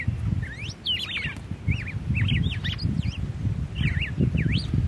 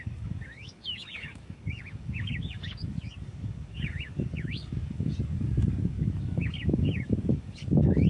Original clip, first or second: first